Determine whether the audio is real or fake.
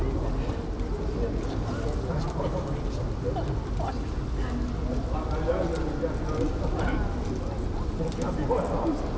real